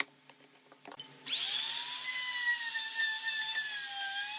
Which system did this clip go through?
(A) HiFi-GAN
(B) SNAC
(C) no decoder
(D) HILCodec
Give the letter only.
C